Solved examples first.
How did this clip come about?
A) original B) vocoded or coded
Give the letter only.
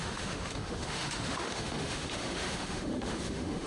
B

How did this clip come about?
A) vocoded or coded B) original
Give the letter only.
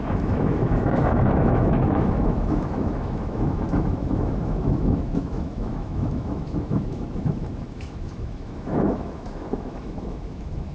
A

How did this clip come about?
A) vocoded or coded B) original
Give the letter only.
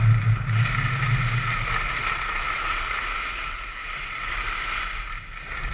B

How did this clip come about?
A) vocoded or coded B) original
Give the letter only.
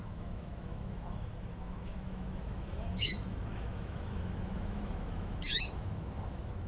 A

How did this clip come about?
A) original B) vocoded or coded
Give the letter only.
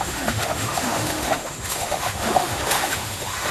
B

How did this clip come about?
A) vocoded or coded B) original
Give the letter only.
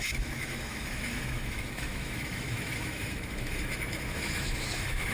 A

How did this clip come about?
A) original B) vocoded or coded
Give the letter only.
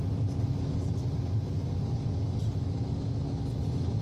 A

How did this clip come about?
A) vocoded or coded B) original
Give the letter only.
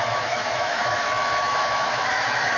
A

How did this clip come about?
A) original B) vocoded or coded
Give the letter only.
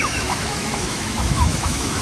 B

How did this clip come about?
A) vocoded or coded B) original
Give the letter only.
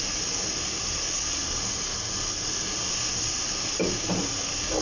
B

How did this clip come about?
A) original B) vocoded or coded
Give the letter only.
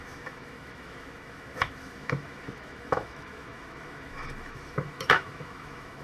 B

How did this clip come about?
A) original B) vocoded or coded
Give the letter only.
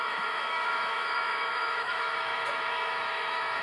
B